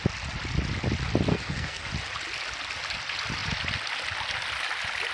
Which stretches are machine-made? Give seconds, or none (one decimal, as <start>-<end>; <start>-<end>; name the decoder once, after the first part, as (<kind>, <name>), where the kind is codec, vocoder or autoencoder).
1.3-1.9 (codec, SNAC)